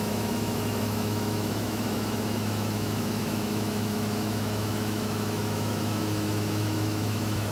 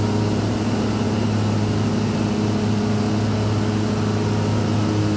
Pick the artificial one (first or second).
first